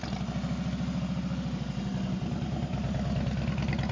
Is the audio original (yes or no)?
yes